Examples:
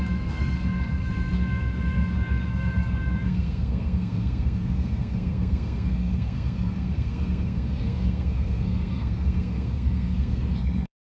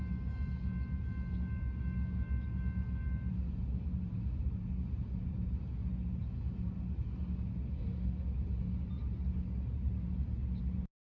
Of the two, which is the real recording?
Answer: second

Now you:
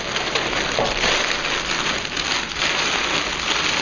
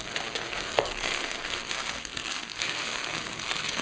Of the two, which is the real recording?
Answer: first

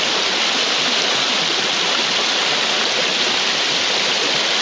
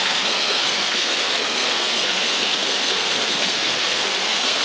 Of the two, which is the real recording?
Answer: first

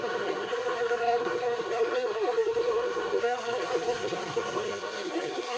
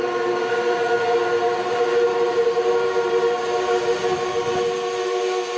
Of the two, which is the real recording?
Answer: second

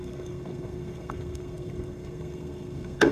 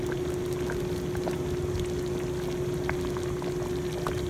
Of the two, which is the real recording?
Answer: second